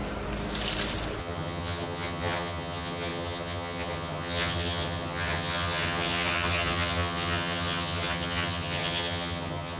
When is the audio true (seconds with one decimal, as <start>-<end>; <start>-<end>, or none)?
0.0-1.2